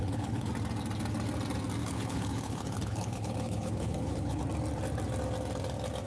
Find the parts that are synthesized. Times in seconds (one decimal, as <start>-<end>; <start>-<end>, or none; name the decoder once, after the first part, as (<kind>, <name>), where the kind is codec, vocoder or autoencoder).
0.0-0.5 (codec, HILCodec); 1.8-4.4